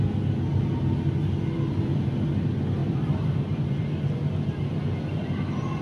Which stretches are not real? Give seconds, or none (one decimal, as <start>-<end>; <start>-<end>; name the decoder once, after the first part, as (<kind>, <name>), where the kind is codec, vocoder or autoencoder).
2.8-3.5 (vocoder, BigVGAN v2)